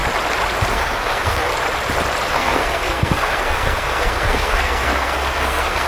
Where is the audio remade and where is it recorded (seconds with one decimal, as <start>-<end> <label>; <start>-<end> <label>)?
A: 0.0-0.7 recorded; 0.7-1.5 remade; 1.5-2.3 recorded; 2.3-5.9 remade